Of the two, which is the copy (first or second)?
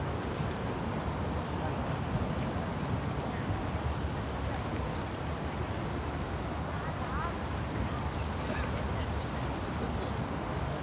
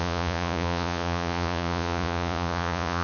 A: second